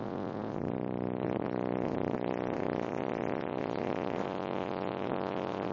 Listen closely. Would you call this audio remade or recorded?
remade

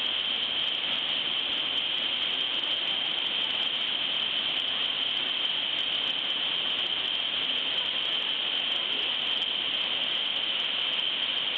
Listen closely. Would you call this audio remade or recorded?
recorded